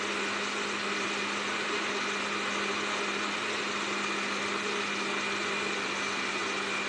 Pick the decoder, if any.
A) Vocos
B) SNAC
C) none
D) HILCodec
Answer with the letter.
C